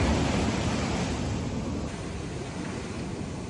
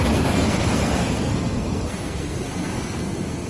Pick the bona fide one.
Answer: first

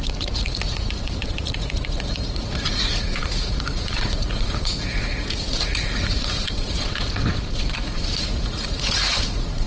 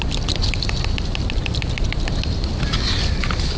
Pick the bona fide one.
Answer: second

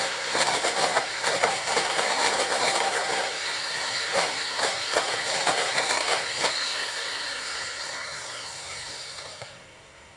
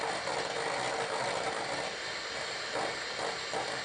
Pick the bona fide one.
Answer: second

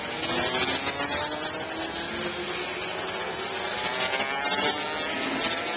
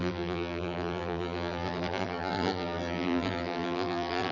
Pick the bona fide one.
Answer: first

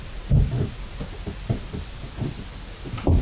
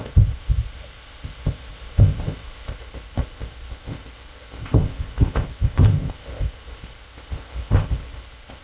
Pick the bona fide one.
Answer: first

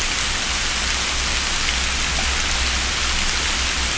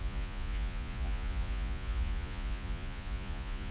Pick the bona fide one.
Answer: first